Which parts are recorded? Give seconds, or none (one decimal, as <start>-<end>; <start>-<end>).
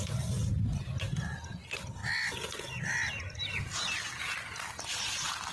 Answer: 0.0-5.5